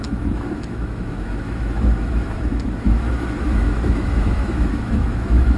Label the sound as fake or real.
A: fake